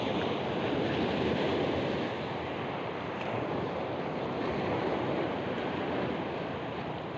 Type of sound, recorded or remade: recorded